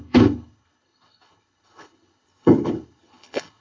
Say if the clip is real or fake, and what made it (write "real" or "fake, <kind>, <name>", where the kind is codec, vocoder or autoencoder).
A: fake, codec, HILCodec